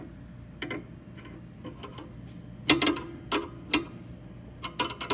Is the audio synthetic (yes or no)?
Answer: no